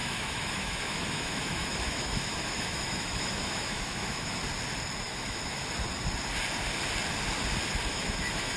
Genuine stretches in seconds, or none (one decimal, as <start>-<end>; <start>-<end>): 4.4-5.0; 5.6-7.9